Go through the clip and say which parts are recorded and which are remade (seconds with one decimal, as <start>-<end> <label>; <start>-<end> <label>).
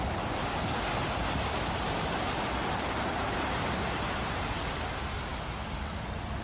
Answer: 0.0-6.4 remade